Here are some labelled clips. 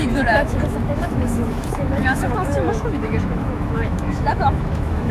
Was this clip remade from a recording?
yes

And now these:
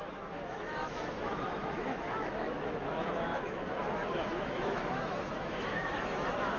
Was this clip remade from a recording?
yes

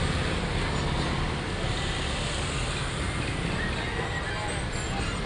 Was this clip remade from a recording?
no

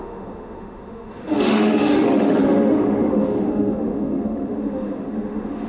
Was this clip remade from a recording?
yes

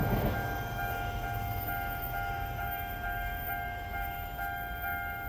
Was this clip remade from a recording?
yes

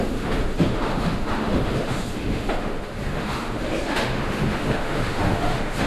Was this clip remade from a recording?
yes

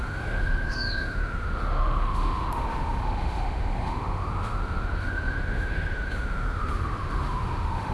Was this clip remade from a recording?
yes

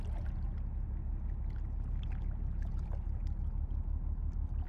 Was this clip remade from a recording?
no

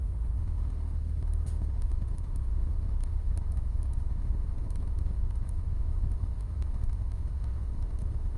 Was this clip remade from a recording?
yes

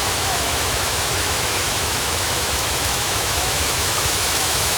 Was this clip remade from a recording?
yes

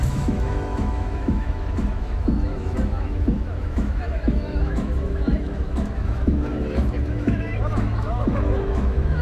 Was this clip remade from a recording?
yes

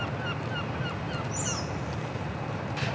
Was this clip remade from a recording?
no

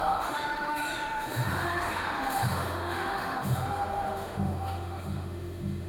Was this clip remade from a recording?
yes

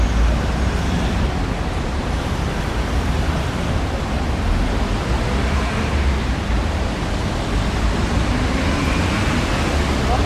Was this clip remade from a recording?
no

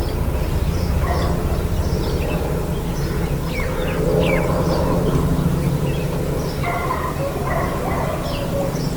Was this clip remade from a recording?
no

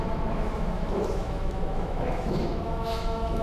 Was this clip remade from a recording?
yes